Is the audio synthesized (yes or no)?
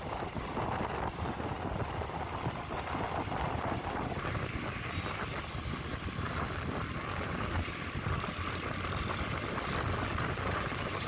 no